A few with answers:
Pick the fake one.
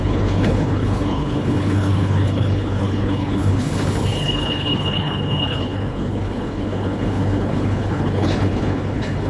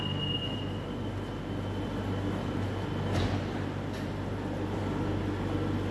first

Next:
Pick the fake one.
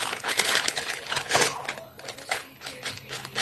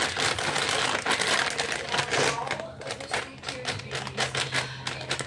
first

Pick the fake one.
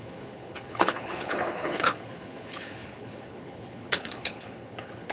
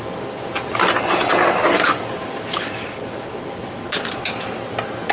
first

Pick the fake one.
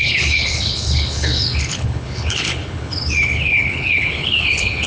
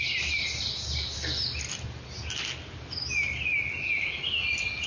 first